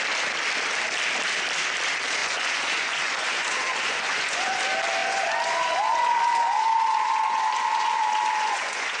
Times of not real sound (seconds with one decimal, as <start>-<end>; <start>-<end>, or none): 2.2-4.6; 5.0-9.0